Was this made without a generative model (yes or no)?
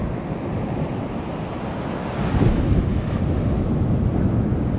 yes